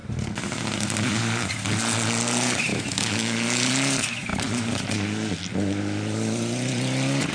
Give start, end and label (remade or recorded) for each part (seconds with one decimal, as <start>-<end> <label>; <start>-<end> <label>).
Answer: 0.0-2.7 recorded; 2.7-3.7 remade; 3.7-7.3 recorded